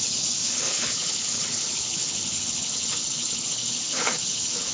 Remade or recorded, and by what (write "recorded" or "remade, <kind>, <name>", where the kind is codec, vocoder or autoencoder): remade, codec, HILCodec